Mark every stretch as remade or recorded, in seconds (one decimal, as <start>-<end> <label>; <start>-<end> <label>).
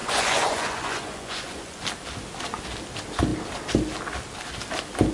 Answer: 0.0-1.8 remade; 1.8-5.1 recorded